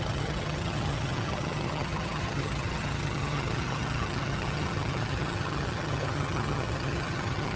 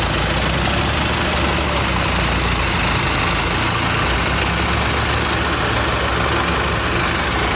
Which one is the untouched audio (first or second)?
second